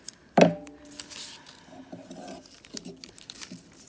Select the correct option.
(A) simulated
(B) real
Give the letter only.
B